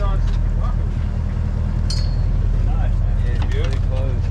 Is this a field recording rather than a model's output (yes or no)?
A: yes